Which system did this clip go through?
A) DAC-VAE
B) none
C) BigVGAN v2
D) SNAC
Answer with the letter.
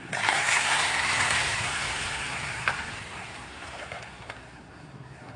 D